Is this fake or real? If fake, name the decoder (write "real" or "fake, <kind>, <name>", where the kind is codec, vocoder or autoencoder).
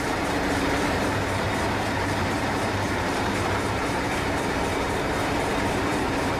fake, vocoder, BigVGAN v2